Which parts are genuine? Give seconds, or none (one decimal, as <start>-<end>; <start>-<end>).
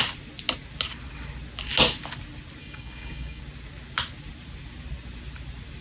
0.0-2.6; 3.4-5.8